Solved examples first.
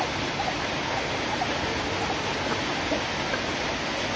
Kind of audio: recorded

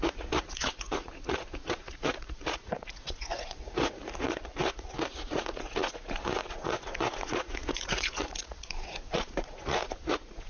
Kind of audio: remade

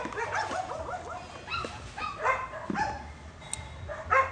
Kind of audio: recorded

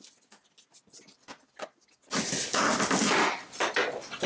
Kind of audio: recorded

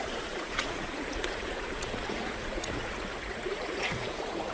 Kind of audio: remade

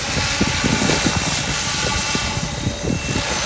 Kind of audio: recorded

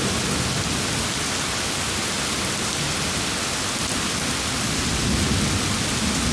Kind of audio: recorded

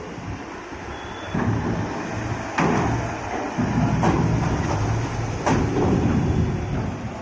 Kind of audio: recorded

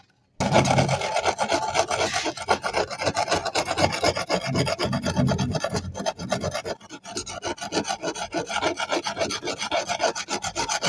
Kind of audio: recorded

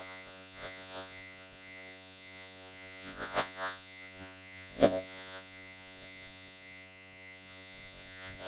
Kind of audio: remade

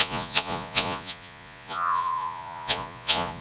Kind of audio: remade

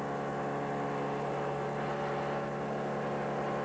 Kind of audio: recorded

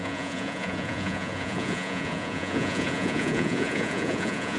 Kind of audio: remade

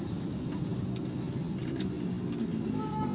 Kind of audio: recorded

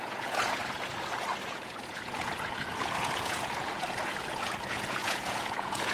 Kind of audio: remade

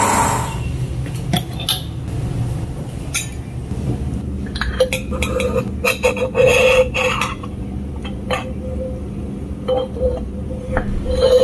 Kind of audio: recorded